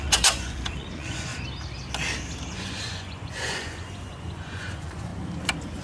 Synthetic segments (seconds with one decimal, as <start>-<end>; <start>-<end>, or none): 0.0-1.3; 2.5-5.1